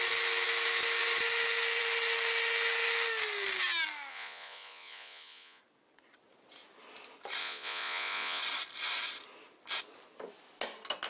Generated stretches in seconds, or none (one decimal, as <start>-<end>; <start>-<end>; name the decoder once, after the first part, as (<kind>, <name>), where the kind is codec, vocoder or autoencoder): 4.1-5.6 (vocoder, Vocos); 7.4-8.4